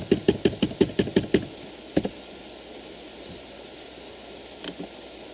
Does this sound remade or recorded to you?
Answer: recorded